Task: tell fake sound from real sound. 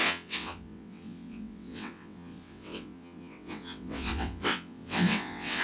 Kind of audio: fake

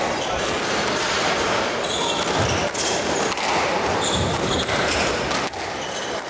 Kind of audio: real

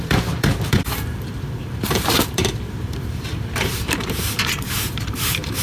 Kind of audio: fake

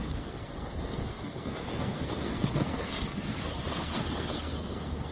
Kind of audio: fake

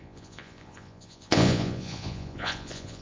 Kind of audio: fake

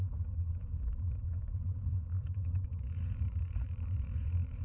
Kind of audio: fake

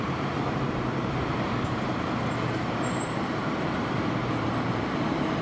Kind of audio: fake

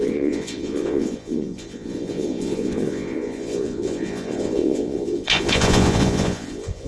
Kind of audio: fake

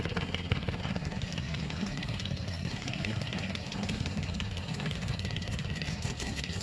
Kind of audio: fake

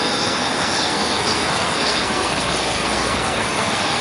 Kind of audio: fake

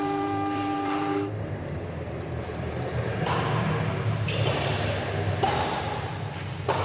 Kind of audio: fake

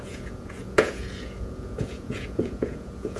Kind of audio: fake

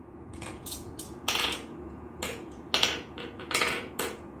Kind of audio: fake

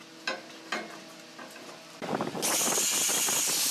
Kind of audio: real